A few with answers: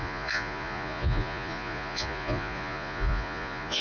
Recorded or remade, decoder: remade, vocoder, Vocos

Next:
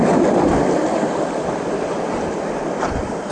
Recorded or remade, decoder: remade, vocoder, BigVGAN v2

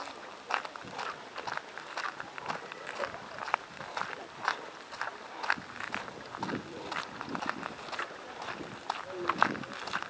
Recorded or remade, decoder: recorded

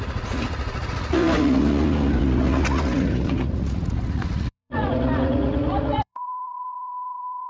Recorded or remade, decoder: remade, vocoder, Vocos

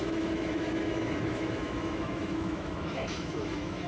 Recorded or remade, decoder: remade, autoencoder, DAC-VAE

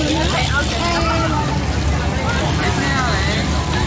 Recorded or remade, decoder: recorded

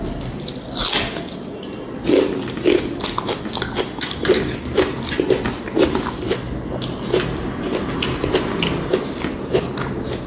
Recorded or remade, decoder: recorded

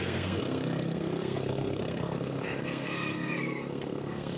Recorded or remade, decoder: remade, codec, SNAC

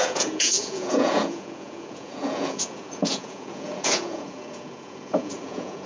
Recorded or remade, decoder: remade, vocoder, Vocos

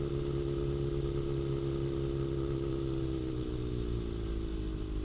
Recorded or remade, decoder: recorded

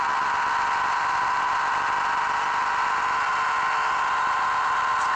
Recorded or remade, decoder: recorded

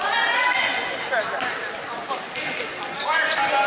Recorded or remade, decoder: recorded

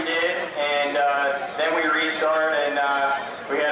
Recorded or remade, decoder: recorded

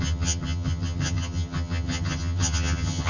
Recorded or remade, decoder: remade, vocoder, HiFi-GAN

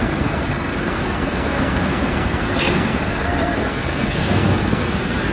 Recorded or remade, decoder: remade, codec, SNAC